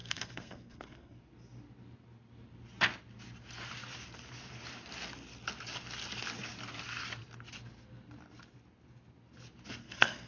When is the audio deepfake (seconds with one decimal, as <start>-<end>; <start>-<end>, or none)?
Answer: 0.0-1.2; 9.8-10.3